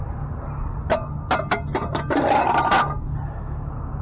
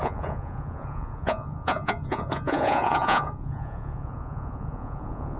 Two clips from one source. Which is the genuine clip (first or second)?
first